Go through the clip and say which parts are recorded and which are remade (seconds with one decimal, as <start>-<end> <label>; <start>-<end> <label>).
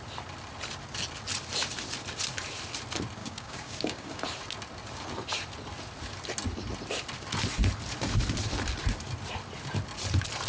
0.0-3.2 recorded; 3.2-4.2 remade; 4.2-10.5 recorded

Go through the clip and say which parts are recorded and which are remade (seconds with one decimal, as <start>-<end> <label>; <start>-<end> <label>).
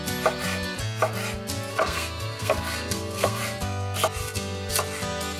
0.0-1.7 recorded; 1.7-3.4 remade; 3.4-4.2 recorded; 4.2-4.7 remade; 4.7-5.4 recorded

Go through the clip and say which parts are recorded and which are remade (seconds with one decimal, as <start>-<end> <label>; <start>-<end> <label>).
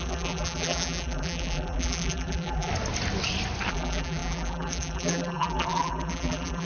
0.0-2.7 remade; 2.7-3.7 recorded; 3.7-6.6 remade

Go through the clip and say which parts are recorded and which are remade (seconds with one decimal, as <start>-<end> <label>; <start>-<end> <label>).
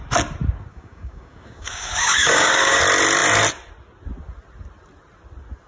0.0-0.7 recorded; 0.7-2.8 remade; 2.8-5.7 recorded